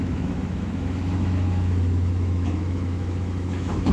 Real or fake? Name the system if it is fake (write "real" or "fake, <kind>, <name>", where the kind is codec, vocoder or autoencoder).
fake, autoencoder, DAC-VAE